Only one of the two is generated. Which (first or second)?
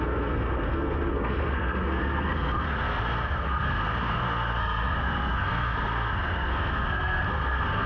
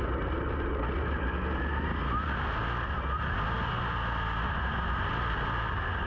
first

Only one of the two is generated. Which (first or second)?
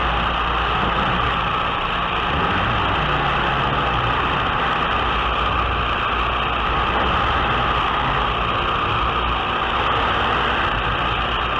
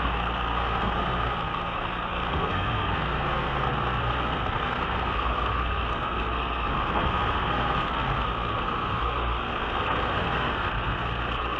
second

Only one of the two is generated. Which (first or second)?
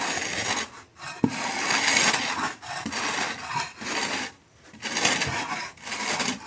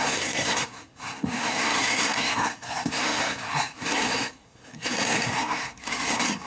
second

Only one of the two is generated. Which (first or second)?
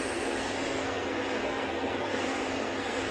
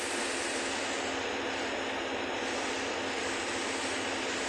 first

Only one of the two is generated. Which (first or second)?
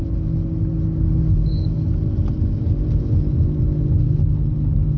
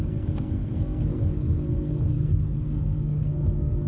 second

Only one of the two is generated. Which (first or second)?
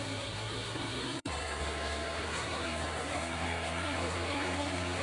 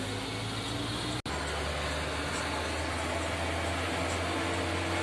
first